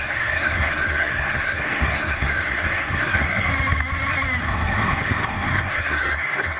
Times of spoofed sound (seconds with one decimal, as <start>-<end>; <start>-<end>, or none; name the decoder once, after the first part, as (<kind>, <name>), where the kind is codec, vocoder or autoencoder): 0.0-3.5 (codec, SNAC); 4.4-6.6